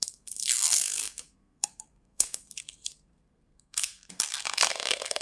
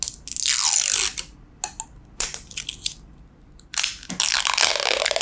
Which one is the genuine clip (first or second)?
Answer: second